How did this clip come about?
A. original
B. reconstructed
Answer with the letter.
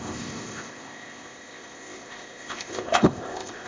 B